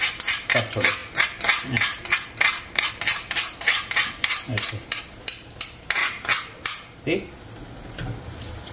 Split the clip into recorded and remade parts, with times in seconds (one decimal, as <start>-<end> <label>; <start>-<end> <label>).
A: 0.0-6.0 remade; 6.0-8.2 recorded; 8.2-8.7 remade

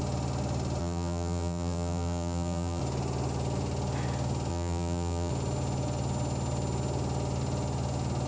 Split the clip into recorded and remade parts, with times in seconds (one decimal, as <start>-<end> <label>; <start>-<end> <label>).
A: 0.0-0.8 recorded; 0.8-2.8 remade; 2.8-4.5 recorded; 4.5-5.3 remade; 5.3-8.3 recorded